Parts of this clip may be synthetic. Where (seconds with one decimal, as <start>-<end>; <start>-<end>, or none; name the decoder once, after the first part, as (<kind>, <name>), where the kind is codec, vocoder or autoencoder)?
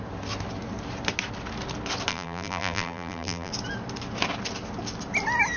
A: 2.1-3.5 (vocoder, BigVGAN v2)